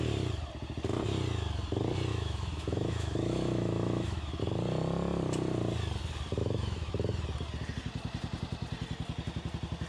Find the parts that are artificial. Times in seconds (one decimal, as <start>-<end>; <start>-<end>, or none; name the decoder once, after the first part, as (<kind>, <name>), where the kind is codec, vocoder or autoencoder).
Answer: 2.1-4.4 (autoencoder, DAC-VAE); 6.4-6.9